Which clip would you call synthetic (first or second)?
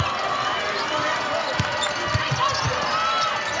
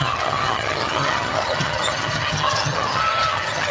second